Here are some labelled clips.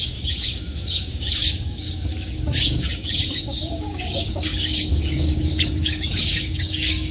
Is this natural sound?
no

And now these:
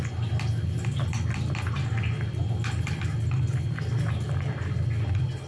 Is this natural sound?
yes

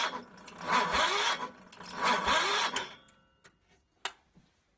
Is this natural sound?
yes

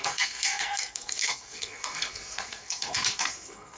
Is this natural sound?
no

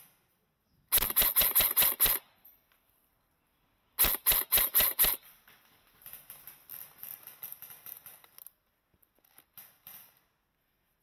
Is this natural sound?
yes